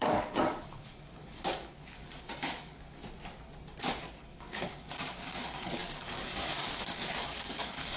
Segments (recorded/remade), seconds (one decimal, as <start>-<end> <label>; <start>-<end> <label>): 0.0-3.0 remade; 3.0-4.2 recorded; 4.2-8.0 remade